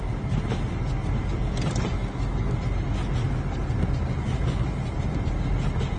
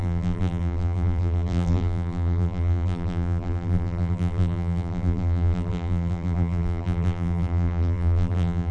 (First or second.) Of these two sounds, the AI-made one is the second